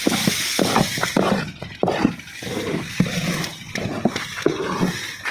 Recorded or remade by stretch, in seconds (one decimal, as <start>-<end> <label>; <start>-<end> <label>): 0.0-5.3 recorded